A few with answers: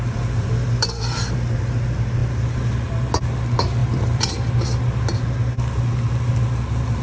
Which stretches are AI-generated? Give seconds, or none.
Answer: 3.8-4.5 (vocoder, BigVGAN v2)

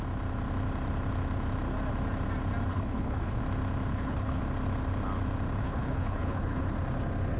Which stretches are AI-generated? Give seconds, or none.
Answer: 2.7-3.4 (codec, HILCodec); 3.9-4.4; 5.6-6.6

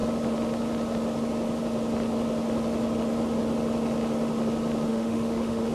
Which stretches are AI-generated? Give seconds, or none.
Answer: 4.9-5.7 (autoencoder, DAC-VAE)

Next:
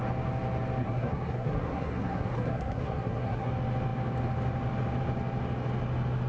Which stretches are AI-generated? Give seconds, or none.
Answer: 0.8-3.5 (codec, SNAC)

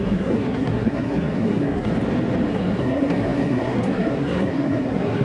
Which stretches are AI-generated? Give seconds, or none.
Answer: 0.0-1.9 (codec, SNAC); 2.5-5.2

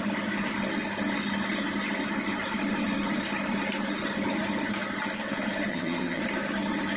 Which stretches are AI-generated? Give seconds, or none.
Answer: 5.7-6.2 (vocoder, HiFi-GAN)

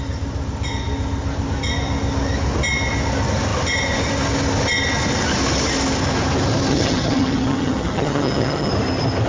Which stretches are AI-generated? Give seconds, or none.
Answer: 6.7-8.7 (vocoder, HiFi-GAN)